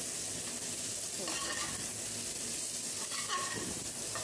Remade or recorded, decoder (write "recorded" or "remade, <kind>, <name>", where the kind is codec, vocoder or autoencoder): recorded